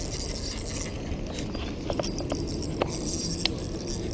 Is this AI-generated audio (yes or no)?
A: no